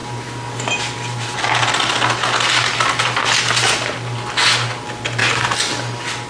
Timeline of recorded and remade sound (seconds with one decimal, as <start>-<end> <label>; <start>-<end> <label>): 0.0-6.3 recorded